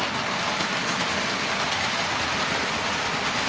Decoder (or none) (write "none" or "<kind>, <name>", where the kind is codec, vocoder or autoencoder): none